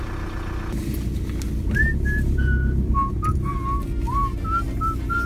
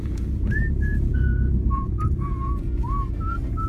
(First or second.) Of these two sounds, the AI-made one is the second